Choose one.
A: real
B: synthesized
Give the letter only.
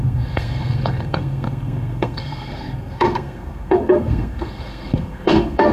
B